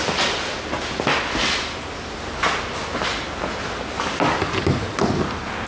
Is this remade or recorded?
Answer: recorded